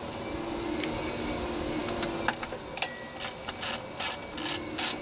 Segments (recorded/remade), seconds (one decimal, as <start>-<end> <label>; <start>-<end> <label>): 0.0-5.0 recorded